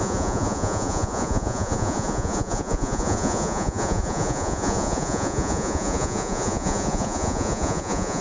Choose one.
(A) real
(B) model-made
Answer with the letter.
B